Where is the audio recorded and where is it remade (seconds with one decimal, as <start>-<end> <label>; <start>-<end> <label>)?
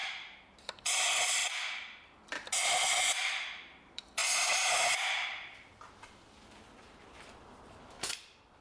0.0-8.6 remade